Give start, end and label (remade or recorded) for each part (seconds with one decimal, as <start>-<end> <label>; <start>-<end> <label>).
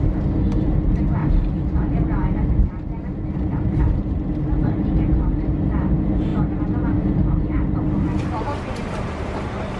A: 0.0-1.2 recorded; 1.2-3.8 remade; 3.8-9.8 recorded